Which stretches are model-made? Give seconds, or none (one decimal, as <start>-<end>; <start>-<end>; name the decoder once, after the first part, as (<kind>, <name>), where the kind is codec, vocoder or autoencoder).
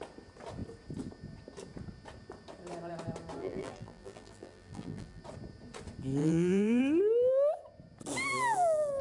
3.4-5.2 (vocoder, BigVGAN v2); 6.2-6.8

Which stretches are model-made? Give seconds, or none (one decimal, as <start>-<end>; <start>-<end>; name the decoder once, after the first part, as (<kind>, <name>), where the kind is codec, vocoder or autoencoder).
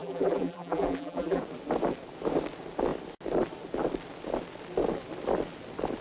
0.0-1.4 (vocoder, BigVGAN v2)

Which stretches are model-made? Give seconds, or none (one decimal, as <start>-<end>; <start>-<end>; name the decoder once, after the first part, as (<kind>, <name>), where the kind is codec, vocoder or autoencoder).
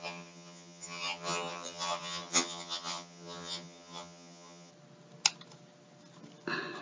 0.0-4.7 (vocoder, HiFi-GAN)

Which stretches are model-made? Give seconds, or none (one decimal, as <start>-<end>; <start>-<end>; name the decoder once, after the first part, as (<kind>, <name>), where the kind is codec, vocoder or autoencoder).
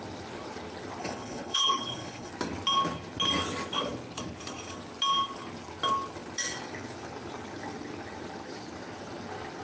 1.0-2.3 (codec, HILCodec)